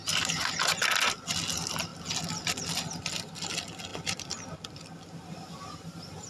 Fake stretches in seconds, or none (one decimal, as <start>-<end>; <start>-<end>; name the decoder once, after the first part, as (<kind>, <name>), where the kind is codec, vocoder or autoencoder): none